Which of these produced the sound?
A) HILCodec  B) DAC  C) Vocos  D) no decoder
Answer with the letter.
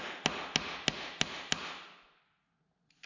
D